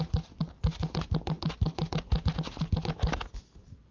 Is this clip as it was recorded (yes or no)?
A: yes